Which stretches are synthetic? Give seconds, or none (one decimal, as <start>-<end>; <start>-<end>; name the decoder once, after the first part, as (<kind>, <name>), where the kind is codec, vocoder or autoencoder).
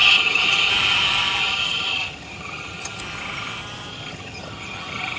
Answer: 0.0-0.7 (vocoder, HiFi-GAN); 1.4-3.0; 3.9-5.2